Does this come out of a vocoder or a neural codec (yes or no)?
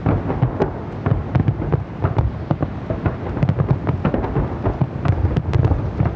no